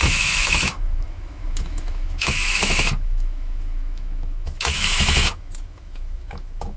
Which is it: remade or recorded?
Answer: remade